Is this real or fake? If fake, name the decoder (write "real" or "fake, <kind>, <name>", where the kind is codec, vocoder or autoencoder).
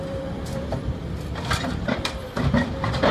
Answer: fake, vocoder, BigVGAN v2